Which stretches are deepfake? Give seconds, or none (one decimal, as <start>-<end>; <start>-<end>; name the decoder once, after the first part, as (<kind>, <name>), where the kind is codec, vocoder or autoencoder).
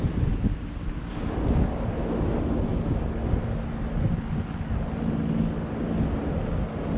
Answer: none